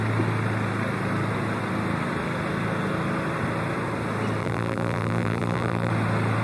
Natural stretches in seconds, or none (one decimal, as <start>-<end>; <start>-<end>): 0.0-4.4; 5.9-6.4